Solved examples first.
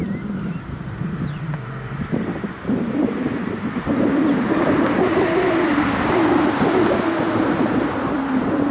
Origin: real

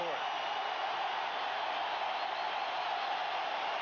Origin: real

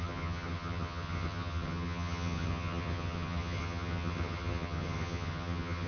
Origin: fake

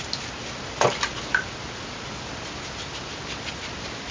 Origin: real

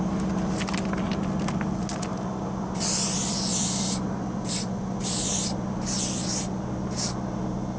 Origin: real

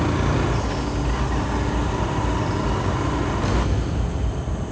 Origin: real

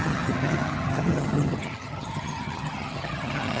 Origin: fake